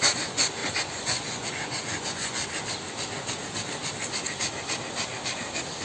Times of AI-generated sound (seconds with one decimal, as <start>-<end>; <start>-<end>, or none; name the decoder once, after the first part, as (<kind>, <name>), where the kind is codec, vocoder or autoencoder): 0.0-2.4 (vocoder, Vocos)